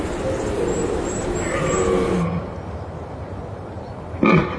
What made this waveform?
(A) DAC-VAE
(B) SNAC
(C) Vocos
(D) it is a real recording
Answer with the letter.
D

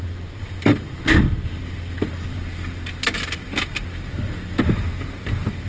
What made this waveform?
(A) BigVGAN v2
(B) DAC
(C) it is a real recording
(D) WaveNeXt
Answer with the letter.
C